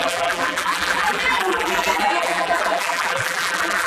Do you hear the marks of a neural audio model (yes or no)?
yes